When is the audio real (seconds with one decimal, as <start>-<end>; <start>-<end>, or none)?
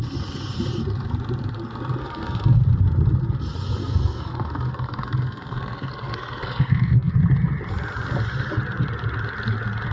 0.0-2.0; 2.6-3.8; 7.1-9.9